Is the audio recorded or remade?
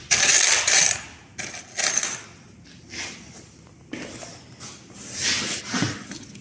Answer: recorded